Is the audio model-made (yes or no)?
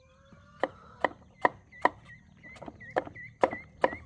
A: no